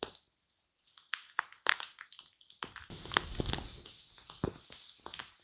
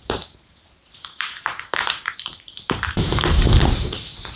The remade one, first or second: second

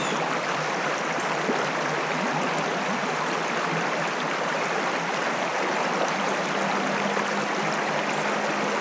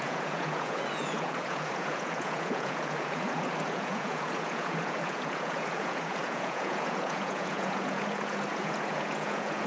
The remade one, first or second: second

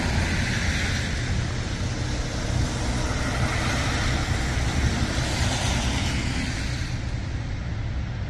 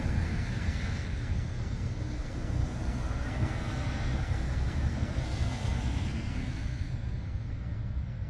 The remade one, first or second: second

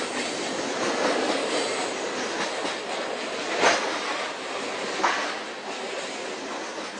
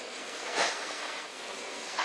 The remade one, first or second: second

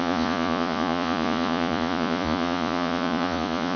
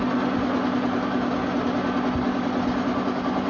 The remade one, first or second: first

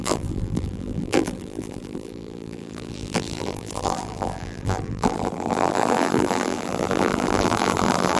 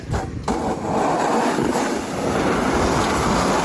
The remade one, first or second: first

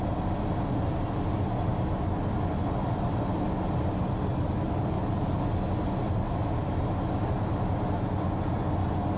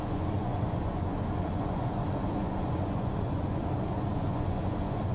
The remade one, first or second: second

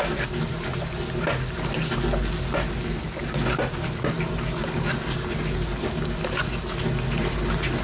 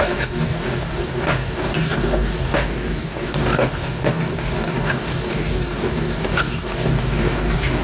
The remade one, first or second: second